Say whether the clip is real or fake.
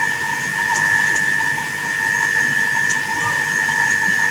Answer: real